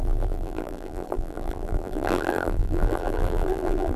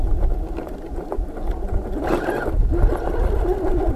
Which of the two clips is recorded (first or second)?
second